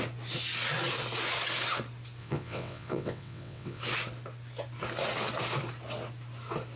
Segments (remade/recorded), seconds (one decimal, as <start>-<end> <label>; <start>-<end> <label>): 0.0-2.2 recorded; 2.2-3.8 remade; 3.8-6.8 recorded

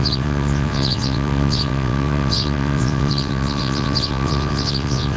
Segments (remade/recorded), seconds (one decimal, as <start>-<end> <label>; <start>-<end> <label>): 0.0-5.2 remade